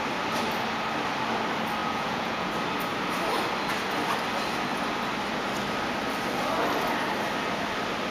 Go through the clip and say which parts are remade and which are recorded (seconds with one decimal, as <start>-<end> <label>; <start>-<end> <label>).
0.0-1.8 recorded; 1.8-2.5 remade; 2.5-8.1 recorded